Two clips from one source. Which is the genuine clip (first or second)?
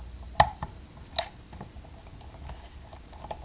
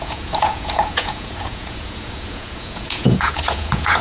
first